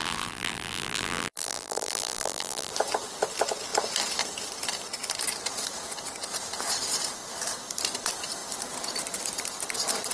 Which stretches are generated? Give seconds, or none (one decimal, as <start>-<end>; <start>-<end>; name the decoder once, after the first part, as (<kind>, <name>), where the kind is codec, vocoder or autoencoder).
0.0-2.7 (vocoder, BigVGAN v2)